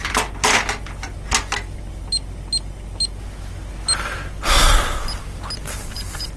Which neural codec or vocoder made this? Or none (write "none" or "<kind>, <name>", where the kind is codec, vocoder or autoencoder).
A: none